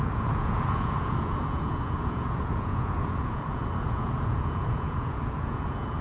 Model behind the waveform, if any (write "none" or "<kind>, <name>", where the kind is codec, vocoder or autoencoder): vocoder, Vocos